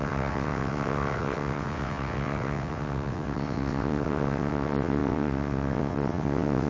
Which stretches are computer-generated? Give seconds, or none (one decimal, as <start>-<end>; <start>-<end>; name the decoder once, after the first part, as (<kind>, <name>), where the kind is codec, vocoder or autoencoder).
0.0-6.7 (vocoder, WaveNeXt)